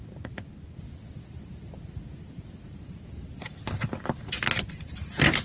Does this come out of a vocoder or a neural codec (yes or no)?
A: no